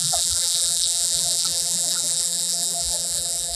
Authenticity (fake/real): fake